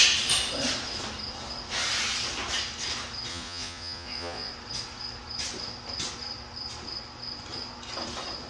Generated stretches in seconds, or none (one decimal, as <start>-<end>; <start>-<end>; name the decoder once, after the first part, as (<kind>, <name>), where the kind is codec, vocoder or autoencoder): 3.3-4.5 (vocoder, Vocos)